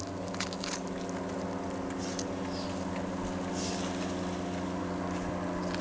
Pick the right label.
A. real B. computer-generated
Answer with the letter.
A